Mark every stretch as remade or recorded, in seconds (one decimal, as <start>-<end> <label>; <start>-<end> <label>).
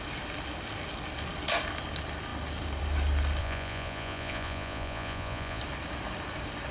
0.0-3.4 recorded; 3.4-5.6 remade; 5.6-6.7 recorded